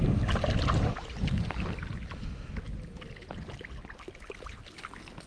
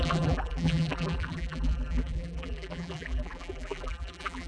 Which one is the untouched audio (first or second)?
first